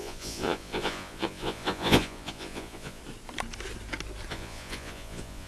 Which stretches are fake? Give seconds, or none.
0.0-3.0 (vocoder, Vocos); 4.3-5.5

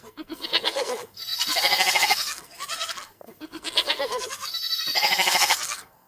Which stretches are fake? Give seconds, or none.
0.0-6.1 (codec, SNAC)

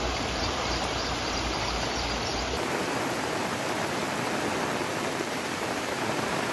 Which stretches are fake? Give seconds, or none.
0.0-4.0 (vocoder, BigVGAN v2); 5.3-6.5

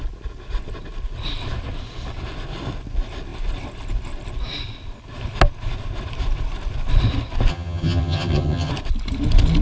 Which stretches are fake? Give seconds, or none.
7.5-8.7 (vocoder, HiFi-GAN)